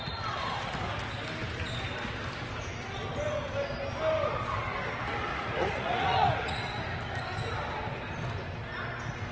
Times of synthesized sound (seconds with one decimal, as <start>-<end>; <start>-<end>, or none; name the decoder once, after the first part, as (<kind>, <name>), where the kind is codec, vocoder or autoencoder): 5.3-6.8 (vocoder, Vocos)